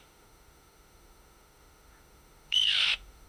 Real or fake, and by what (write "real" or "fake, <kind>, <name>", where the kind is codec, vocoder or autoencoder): fake, autoencoder, DAC-VAE